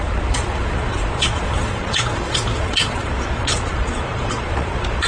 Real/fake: fake